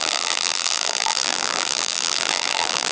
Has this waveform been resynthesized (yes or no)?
yes